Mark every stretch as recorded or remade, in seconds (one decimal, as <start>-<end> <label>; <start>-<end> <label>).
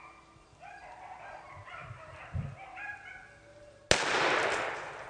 0.0-5.1 recorded